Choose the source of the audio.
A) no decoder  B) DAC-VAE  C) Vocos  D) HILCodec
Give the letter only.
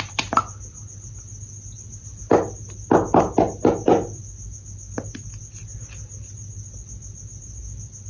A